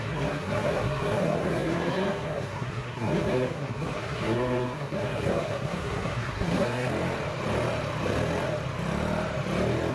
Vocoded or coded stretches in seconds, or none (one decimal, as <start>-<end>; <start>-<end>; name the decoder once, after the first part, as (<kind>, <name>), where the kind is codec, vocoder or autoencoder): 0.0-6.9 (codec, SNAC)